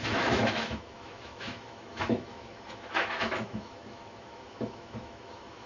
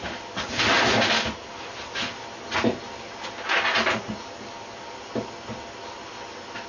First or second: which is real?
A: second